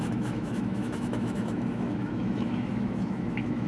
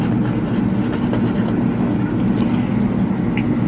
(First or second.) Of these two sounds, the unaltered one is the second